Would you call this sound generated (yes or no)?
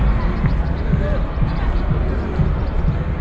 no